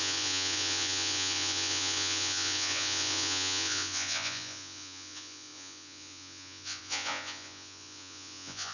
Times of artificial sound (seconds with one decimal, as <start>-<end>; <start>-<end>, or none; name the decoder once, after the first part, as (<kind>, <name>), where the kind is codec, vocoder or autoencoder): 0.0-8.7 (vocoder, Vocos)